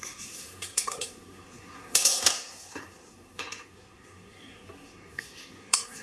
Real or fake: fake